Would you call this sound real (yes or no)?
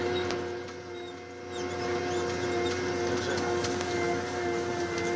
yes